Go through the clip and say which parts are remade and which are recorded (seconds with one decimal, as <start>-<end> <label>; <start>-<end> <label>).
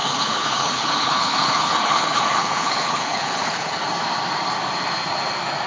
0.0-3.8 remade; 3.8-5.7 recorded